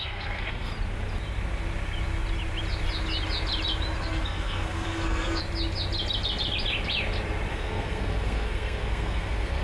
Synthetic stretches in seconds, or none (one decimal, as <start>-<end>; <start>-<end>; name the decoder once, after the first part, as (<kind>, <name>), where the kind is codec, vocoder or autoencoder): 0.0-0.7 (codec, SNAC); 4.0-5.4; 7.5-9.6